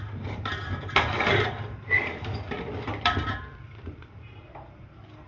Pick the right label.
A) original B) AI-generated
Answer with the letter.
B